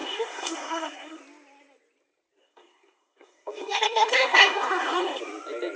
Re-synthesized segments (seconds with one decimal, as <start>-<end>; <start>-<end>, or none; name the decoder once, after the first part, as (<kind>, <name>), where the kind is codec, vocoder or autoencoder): 0.0-1.2 (codec, SNAC); 2.4-5.2